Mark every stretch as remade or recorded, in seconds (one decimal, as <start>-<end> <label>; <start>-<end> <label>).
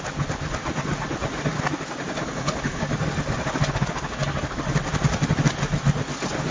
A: 0.0-2.2 recorded; 2.2-2.8 remade; 2.8-6.5 recorded